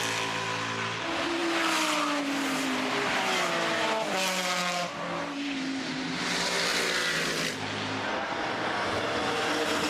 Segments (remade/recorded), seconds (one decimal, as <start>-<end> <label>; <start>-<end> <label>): 0.0-9.9 recorded